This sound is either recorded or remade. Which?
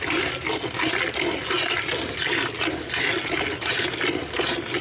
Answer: recorded